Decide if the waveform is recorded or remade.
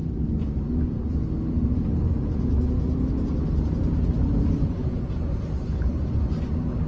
recorded